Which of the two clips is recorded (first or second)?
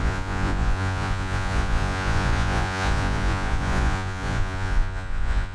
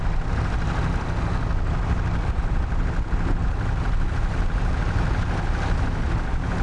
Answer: second